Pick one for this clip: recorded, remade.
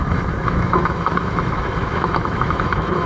remade